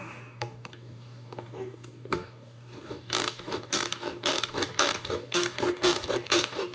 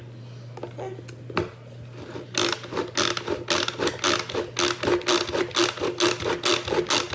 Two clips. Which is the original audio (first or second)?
second